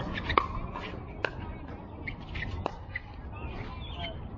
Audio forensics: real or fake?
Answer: real